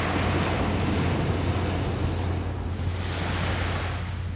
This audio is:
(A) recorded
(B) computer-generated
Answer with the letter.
A